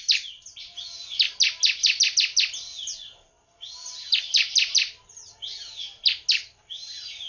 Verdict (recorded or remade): recorded